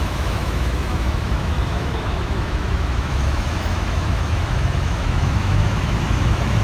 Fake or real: fake